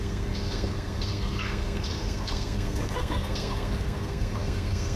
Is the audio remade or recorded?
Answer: remade